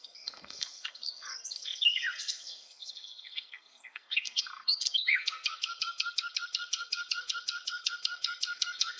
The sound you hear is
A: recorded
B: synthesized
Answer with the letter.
B